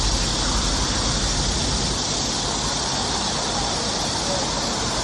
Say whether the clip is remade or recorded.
recorded